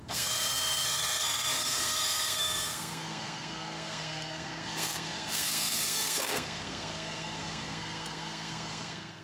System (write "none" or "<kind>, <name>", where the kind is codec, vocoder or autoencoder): codec, SNAC